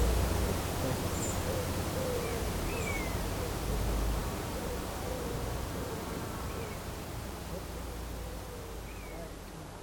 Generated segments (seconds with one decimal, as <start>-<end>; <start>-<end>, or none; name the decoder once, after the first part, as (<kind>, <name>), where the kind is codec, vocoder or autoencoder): 4.2-7.4 (vocoder, BigVGAN v2)